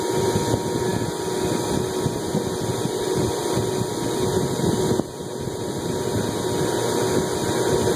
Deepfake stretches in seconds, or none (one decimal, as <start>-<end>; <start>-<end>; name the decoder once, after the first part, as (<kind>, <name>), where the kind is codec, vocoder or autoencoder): none